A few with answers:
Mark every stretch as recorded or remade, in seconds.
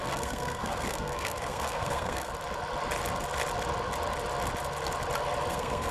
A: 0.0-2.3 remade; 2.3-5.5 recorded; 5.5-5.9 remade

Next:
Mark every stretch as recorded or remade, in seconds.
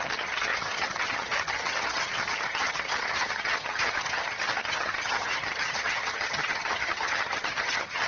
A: 0.0-8.1 remade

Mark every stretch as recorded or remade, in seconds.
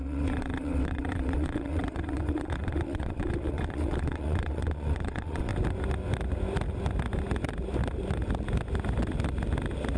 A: 0.0-5.5 remade; 5.5-10.0 recorded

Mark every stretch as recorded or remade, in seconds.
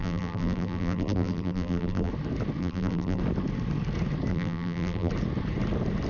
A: 0.0-2.1 remade; 2.1-2.6 recorded; 2.6-3.2 remade; 3.2-4.3 recorded; 4.3-5.1 remade; 5.1-6.1 recorded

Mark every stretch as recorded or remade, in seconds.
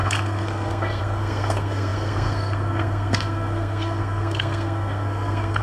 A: 0.0-5.6 remade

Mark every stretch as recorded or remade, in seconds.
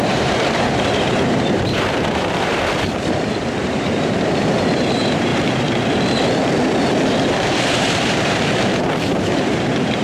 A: 0.0-2.5 remade; 2.5-3.6 recorded; 3.6-5.3 remade; 5.3-7.6 recorded; 7.6-10.0 remade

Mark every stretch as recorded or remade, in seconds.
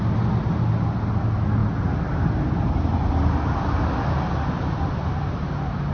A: 0.0-5.9 recorded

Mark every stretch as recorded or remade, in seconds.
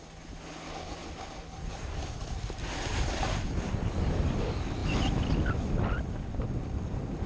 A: 0.0-7.3 recorded